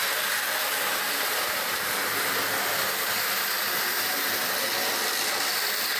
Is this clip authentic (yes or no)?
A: yes